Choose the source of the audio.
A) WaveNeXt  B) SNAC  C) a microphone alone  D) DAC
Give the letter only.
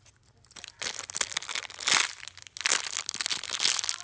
C